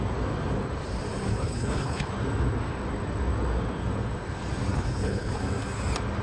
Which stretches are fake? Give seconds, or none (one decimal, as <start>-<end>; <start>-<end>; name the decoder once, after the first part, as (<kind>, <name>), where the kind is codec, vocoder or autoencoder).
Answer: 1.3-2.1 (codec, HILCodec); 4.7-5.4